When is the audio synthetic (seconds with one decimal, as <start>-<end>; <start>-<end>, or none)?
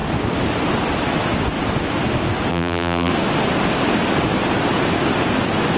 2.5-3.1